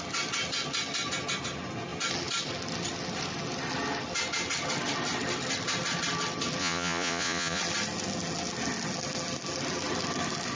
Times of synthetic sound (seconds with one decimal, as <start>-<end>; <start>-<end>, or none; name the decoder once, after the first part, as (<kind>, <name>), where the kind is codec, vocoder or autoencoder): 6.6-7.6 (vocoder, Vocos)